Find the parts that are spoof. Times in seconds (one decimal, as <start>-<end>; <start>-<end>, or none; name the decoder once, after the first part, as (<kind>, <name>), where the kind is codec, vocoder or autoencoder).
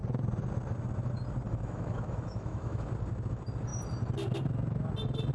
1.5-2.9 (autoencoder, DAC-VAE)